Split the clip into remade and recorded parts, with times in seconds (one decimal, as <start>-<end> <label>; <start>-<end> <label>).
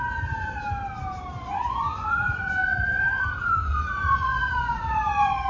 0.0-0.6 remade; 0.6-1.4 recorded; 1.4-5.5 remade